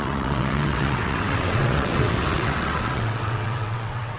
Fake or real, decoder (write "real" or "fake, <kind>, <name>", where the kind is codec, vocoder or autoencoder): fake, vocoder, WaveNeXt